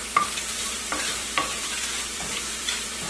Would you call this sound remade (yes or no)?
yes